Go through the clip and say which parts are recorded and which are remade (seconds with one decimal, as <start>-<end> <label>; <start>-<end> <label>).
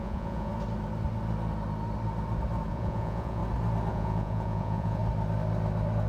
0.0-0.5 remade; 0.5-2.7 recorded; 2.7-3.4 remade; 3.4-3.9 recorded; 3.9-5.0 remade; 5.0-6.1 recorded